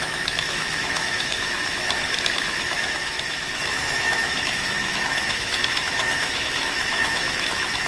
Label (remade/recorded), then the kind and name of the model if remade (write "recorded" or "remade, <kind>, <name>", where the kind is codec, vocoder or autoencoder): remade, autoencoder, DAC-VAE